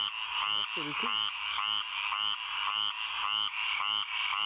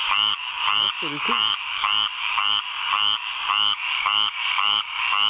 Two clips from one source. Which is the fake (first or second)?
second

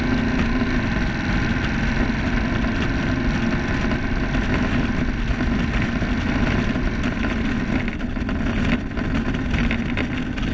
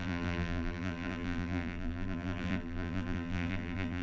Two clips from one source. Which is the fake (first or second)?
second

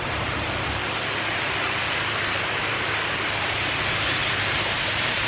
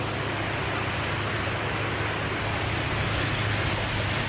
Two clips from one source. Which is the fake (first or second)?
first